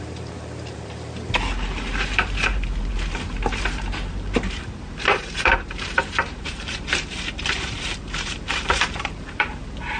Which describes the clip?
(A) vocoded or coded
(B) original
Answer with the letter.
A